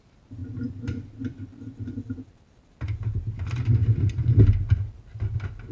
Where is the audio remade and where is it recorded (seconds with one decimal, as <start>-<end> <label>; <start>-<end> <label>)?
0.0-5.7 recorded